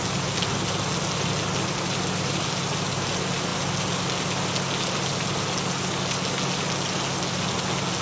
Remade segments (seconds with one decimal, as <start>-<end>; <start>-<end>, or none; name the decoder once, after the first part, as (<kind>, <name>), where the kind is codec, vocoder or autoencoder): none